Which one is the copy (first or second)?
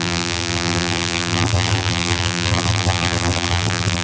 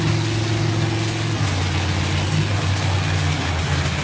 first